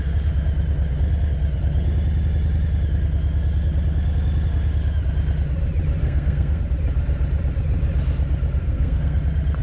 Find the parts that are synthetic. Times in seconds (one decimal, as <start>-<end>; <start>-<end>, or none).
6.0-6.6; 8.6-9.2